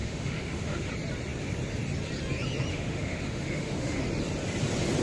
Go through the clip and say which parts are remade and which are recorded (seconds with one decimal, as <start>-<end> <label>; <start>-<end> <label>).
0.0-0.9 remade; 0.9-2.7 recorded; 2.7-4.0 remade; 4.0-5.0 recorded